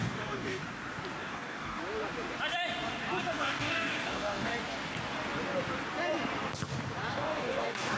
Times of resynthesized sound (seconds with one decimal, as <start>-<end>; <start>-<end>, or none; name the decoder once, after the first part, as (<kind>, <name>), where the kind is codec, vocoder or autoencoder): 0.0-0.6 (codec, DAC); 1.2-1.8; 3.2-4.5; 7.1-8.0

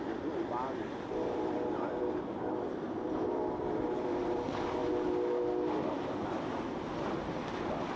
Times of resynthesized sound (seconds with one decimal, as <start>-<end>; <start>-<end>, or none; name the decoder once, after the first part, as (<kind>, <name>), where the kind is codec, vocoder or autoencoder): 0.0-4.8 (vocoder, BigVGAN v2); 5.9-8.0

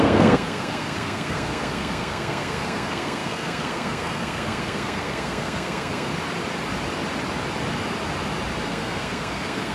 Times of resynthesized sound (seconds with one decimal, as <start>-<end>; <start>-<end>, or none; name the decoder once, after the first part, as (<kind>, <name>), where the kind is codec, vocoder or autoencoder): 0.0-6.1 (codec, SNAC); 8.7-9.7

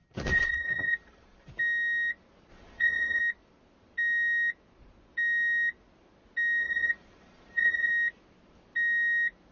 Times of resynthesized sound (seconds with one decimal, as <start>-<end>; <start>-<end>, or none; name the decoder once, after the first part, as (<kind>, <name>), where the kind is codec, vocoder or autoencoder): 0.0-1.5 (vocoder, Vocos); 2.5-3.2; 6.6-7.9